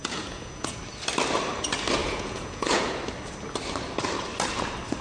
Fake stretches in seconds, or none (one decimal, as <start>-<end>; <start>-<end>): 0.0-0.8; 2.0-3.0